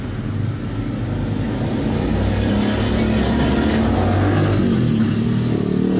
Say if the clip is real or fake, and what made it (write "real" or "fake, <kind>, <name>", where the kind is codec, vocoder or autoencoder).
real